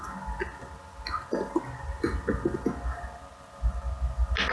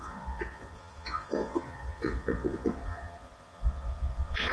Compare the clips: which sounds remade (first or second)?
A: second